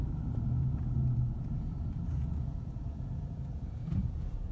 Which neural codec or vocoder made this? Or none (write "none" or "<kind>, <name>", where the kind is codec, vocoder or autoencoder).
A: vocoder, Vocos